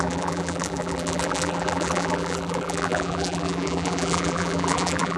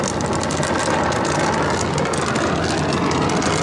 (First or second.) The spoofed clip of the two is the first